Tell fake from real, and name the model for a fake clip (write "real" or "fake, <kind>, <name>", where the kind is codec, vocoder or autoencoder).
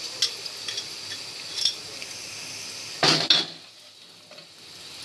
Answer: real